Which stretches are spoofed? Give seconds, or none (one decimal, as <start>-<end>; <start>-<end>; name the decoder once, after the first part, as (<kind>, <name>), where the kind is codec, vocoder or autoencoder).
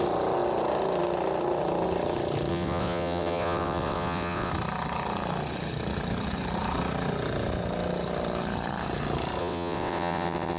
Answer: 2.5-4.5 (vocoder, WaveNeXt); 9.4-10.6